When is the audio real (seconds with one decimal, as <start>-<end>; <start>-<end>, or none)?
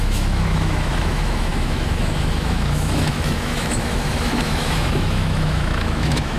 none